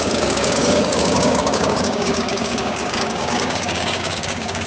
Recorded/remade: remade